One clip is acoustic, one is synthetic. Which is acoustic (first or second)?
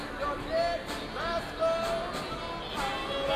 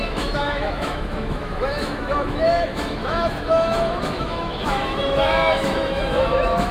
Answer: first